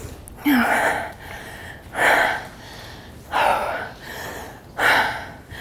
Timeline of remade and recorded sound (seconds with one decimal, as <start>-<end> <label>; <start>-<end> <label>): 0.0-1.6 recorded; 1.6-2.3 remade; 2.3-3.6 recorded; 3.6-4.3 remade; 4.3-5.6 recorded